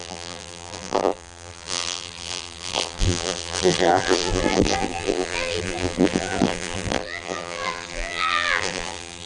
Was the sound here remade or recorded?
remade